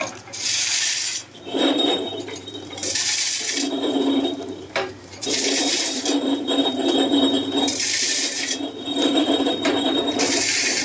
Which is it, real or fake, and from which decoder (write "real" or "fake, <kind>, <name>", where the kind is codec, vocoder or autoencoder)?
fake, vocoder, BigVGAN v2